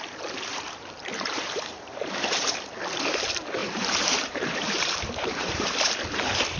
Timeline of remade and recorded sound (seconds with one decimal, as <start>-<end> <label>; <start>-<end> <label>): 0.0-0.5 recorded; 0.5-2.8 remade; 2.8-3.6 recorded; 3.6-6.0 remade; 6.0-6.6 recorded

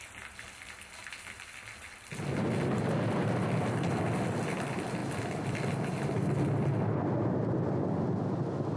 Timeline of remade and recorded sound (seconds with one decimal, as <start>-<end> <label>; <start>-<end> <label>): 0.0-8.8 recorded